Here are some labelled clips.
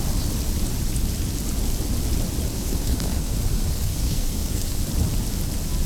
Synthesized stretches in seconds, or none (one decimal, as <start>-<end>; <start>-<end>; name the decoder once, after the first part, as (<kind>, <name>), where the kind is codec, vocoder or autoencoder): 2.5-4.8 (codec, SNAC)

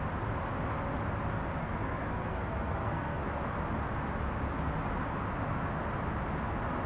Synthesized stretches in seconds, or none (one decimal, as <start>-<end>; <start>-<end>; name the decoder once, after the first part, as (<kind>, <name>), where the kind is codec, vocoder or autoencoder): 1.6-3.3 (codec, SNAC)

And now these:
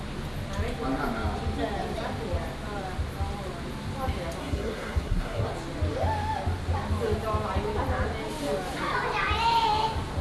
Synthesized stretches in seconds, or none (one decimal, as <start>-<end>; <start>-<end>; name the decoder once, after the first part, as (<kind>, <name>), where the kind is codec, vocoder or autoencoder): 4.4-5.5 (codec, SNAC)

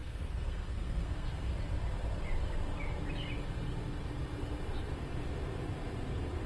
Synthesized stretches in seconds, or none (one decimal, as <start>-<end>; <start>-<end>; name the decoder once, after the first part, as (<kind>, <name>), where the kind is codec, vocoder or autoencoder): 0.0-1.5 (codec, SNAC)